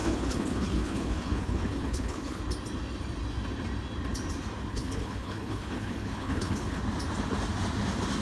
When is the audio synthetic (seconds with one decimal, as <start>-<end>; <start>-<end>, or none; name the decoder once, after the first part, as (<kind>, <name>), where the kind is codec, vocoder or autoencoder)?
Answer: 0.0-2.4 (codec, HILCodec); 4.7-6.8